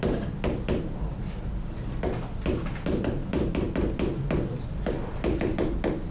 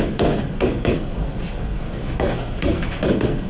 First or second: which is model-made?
second